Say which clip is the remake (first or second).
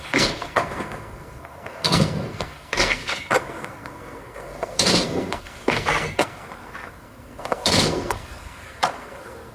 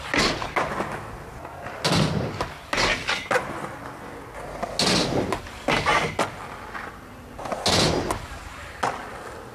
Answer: first